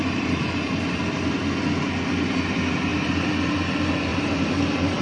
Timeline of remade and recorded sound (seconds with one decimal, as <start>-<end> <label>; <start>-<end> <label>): 0.0-1.0 remade; 1.0-4.1 recorded; 4.1-5.0 remade